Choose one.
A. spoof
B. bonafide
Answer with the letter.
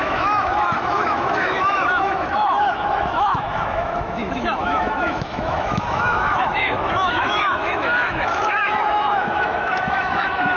A